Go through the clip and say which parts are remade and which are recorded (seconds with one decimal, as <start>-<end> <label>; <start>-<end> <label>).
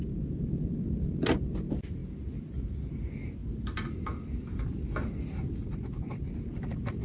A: 0.0-3.4 recorded; 3.4-5.7 remade; 5.7-7.0 recorded